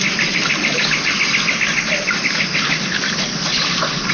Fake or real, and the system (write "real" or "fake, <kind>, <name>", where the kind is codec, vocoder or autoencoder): fake, vocoder, BigVGAN v2